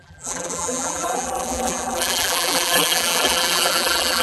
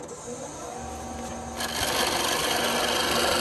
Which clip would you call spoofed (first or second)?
first